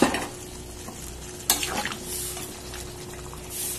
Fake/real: real